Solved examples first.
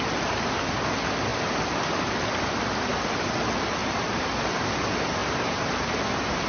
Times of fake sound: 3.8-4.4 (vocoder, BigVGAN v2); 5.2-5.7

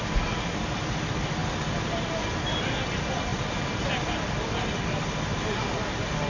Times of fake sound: 3.3-3.9 (vocoder, BigVGAN v2); 5.3-5.8

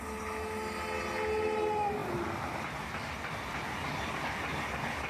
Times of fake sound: none

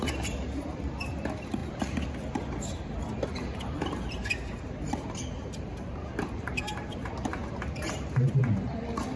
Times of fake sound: 0.0-8.4 (vocoder, BigVGAN v2)

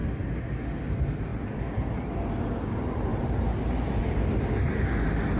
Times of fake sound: 1.3-1.9 (vocoder, BigVGAN v2); 3.1-4.0